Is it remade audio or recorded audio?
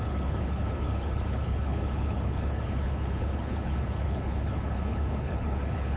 remade